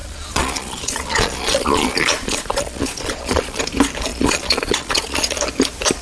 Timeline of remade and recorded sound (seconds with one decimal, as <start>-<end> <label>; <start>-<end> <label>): 0.0-3.6 remade; 3.6-4.1 recorded; 4.1-5.4 remade; 5.4-6.0 recorded